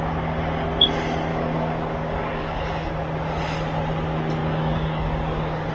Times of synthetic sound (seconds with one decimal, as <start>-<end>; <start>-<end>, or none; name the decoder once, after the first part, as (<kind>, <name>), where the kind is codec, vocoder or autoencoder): 1.3-2.9 (codec, DAC); 4.4-5.7